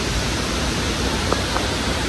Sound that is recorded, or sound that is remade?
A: remade